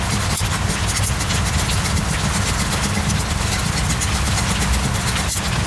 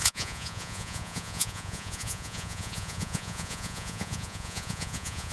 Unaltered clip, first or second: first